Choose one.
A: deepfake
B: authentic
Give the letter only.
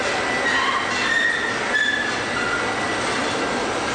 B